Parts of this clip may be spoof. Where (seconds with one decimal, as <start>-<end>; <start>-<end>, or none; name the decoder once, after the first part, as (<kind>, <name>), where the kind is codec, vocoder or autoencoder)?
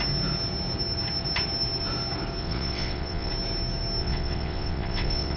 2.4-3.3 (vocoder, WaveNeXt); 4.0-5.4